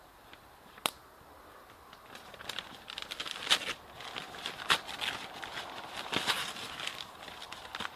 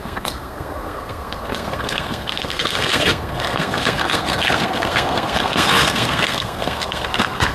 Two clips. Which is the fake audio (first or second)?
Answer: second